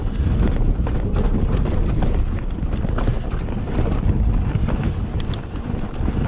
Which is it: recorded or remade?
recorded